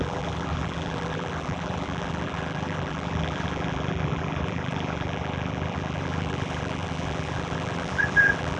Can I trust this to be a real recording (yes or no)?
no